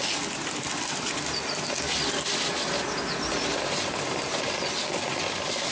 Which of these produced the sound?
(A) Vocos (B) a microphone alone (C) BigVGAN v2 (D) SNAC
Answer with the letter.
B